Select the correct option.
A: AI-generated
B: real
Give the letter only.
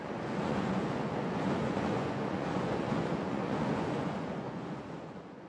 A